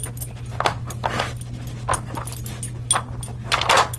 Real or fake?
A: real